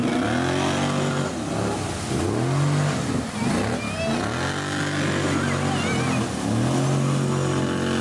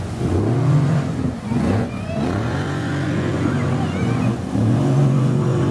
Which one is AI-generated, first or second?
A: second